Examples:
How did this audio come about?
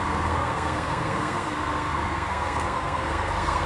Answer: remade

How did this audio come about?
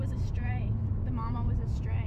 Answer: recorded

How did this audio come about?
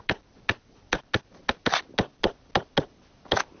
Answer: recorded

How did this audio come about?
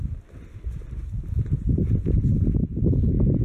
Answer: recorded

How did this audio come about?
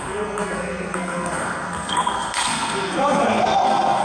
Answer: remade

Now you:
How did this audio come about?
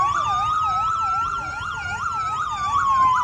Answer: recorded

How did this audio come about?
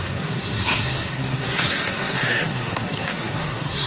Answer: remade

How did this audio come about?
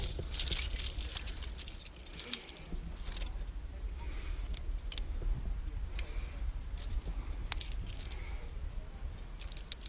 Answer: recorded